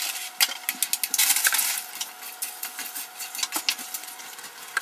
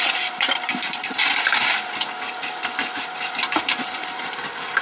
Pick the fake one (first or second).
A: second